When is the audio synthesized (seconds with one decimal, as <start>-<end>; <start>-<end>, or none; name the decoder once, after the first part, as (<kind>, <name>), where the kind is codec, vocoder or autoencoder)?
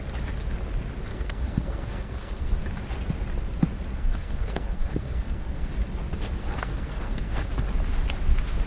1.1-2.5 (codec, SNAC); 3.9-5.7; 6.4-7.5